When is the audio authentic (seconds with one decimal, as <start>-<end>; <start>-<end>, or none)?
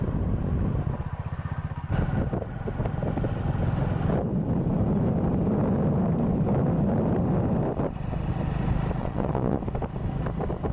0.0-9.0; 9.6-10.7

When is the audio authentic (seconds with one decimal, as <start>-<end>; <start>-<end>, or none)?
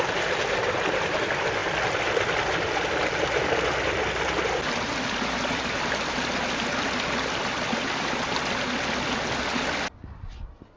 0.0-10.8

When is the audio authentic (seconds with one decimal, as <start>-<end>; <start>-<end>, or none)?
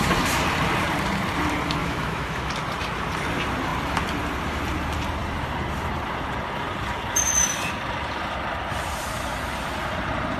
0.0-1.8; 2.5-10.4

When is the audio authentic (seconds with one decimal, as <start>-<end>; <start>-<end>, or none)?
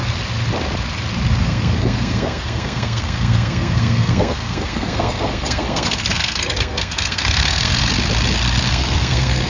0.0-1.4; 7.8-8.7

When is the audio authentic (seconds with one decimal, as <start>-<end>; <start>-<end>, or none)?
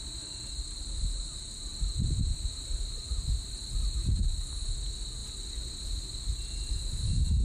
0.0-7.4